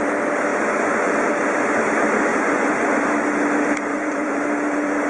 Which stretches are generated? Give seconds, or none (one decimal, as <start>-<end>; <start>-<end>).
0.5-1.1; 2.3-3.1; 3.9-4.4